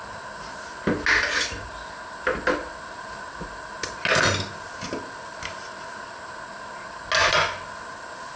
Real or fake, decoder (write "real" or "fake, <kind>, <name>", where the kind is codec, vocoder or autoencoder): real